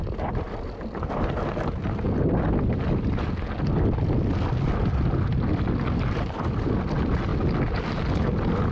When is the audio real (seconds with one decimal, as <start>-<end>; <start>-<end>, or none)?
0.0-8.7